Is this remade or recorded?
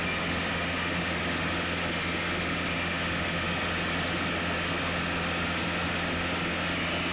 recorded